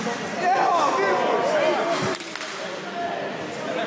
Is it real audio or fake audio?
real